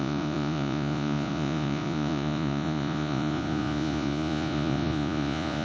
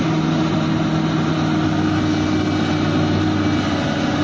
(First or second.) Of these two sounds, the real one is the second